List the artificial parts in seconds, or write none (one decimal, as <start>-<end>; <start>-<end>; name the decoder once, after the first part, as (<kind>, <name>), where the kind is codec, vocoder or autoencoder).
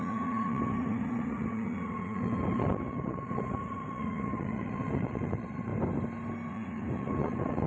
0.0-5.7 (vocoder, Vocos); 6.5-7.7